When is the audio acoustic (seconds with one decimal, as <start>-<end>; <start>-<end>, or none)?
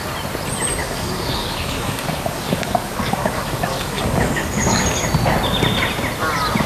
0.0-0.8; 4.8-6.7